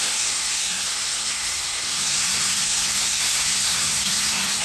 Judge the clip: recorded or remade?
remade